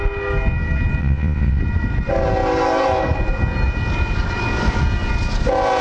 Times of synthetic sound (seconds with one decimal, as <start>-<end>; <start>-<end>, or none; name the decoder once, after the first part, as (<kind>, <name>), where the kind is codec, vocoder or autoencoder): 1.0-1.6 (vocoder, Vocos)